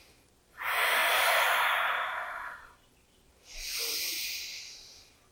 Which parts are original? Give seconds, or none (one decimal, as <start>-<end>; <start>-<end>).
0.0-1.0; 4.2-5.3